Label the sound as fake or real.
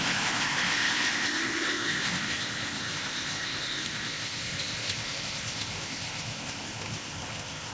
fake